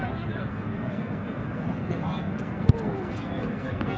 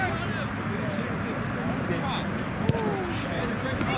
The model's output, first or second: first